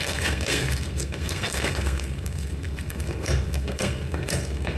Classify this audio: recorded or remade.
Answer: remade